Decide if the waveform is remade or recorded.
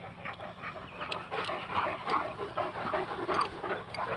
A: recorded